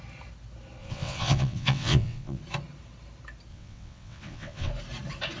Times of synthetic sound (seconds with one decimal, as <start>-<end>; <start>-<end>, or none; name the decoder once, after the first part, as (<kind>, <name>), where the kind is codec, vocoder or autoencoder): 0.8-2.4 (vocoder, WaveNeXt); 3.5-4.7